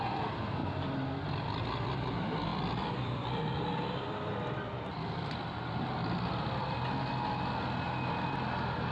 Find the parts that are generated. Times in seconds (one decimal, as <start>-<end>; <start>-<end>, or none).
2.5-6.7